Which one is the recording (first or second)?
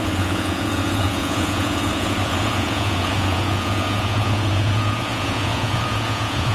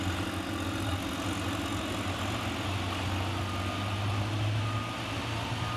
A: second